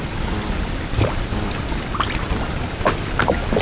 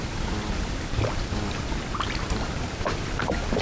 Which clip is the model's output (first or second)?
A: first